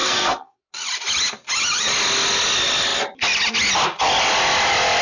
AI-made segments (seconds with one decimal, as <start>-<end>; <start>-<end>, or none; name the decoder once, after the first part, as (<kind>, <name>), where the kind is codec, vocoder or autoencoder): 0.0-0.6 (codec, SNAC)